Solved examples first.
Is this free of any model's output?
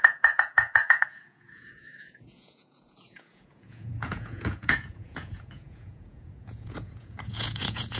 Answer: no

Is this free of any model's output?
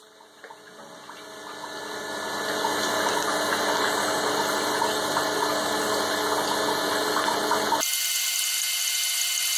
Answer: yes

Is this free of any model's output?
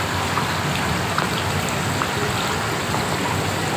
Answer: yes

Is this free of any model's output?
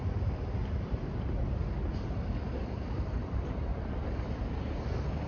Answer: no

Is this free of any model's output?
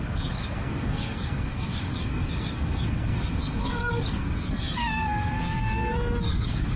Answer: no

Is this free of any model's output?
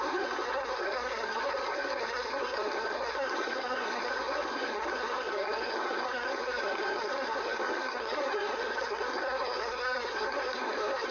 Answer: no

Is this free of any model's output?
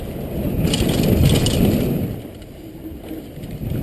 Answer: yes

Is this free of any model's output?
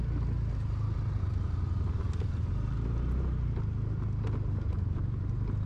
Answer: yes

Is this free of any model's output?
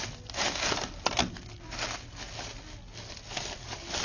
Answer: yes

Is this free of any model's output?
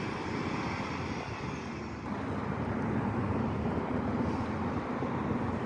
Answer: yes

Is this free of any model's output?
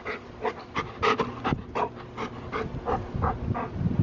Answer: yes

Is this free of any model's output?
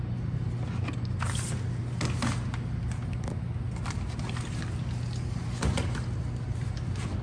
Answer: yes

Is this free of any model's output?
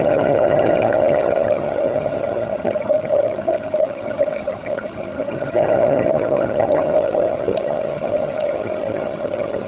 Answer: no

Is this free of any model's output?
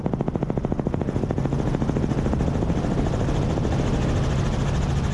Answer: yes